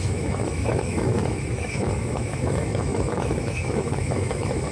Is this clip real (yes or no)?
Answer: no